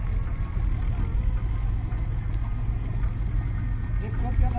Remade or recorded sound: recorded